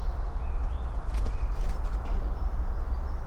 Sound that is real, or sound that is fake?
real